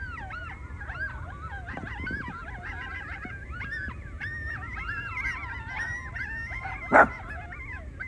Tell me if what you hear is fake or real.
fake